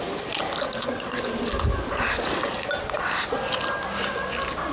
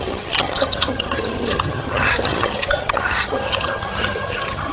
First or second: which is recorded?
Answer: first